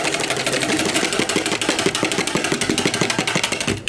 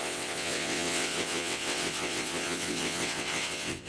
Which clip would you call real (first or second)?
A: first